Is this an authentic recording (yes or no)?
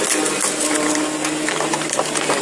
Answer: yes